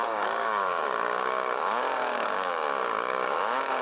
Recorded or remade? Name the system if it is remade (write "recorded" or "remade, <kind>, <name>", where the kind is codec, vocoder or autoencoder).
remade, codec, DAC